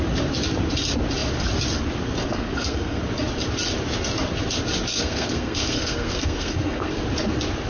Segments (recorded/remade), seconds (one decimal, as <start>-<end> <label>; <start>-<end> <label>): 0.0-2.3 recorded; 2.3-3.0 remade; 3.0-4.9 recorded; 4.9-7.0 remade; 7.0-7.7 recorded